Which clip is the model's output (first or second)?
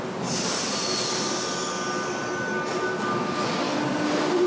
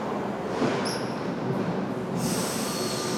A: first